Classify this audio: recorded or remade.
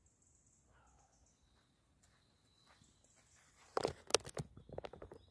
recorded